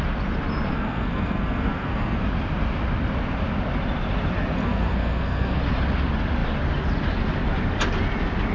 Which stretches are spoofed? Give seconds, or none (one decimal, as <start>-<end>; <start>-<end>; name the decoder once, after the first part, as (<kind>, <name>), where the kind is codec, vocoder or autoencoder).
0.7-2.2 (codec, SNAC); 4.6-5.6